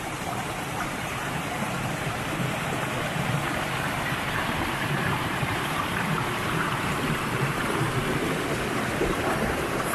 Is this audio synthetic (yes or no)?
yes